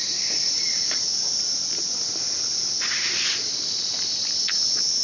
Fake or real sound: real